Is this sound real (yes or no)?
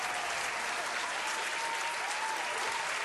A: yes